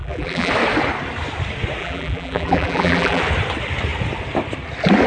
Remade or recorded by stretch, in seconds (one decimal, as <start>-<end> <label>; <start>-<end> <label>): 0.0-0.5 remade; 0.5-1.8 recorded; 1.8-3.2 remade; 3.2-5.1 recorded